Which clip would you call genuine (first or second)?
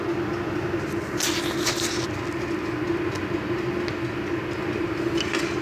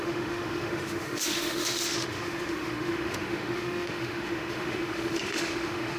first